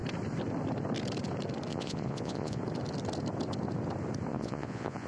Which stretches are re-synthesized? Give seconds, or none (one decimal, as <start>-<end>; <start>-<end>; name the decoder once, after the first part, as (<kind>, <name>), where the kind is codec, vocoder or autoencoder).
1.7-2.6 (vocoder, Vocos); 4.3-5.1

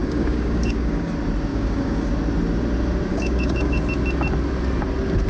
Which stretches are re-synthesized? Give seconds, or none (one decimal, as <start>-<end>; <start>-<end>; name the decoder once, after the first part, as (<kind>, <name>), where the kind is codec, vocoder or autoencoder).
0.0-1.1 (codec, DAC); 1.5-2.1; 3.1-3.8

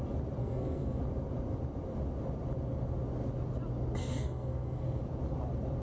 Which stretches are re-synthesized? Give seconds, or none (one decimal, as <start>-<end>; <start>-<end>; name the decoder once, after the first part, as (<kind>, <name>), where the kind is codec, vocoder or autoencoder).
0.4-1.0 (codec, SNAC); 4.0-5.0

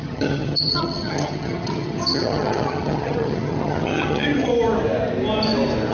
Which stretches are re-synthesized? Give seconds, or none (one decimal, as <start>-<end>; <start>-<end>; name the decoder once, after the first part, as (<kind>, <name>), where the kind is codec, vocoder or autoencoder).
0.0-4.5 (vocoder, HiFi-GAN)

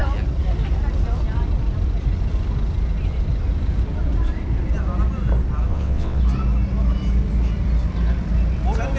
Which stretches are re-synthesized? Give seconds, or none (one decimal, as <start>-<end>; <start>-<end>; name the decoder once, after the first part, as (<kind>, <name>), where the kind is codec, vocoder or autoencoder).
5.7-6.2 (vocoder, WaveNeXt)

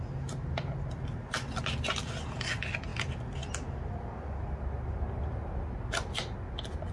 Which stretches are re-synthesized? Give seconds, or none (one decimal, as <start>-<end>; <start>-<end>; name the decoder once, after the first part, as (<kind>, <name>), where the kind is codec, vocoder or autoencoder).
none

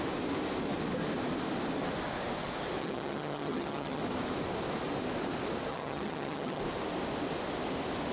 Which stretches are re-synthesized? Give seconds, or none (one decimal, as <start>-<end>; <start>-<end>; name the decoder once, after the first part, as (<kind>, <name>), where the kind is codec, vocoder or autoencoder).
2.8-4.0 (vocoder, HiFi-GAN); 5.7-6.6

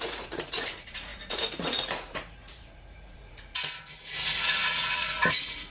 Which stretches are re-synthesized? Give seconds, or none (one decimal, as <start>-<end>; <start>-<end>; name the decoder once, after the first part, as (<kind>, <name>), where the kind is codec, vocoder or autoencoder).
0.0-5.7 (vocoder, Vocos)